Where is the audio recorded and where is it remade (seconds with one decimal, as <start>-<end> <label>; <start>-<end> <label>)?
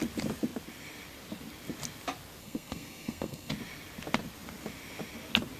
0.0-2.4 recorded; 2.4-3.5 remade; 3.5-5.6 recorded